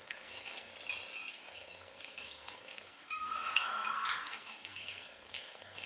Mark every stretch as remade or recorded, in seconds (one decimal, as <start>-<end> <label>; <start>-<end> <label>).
0.0-0.7 remade; 0.7-1.3 recorded; 1.3-5.9 remade